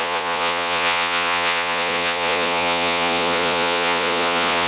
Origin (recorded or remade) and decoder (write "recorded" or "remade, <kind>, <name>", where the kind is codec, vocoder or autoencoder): remade, vocoder, Vocos